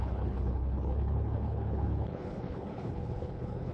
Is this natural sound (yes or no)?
no